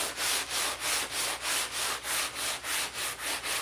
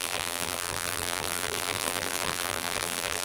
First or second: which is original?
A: first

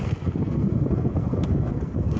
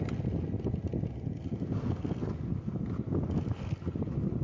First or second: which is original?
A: second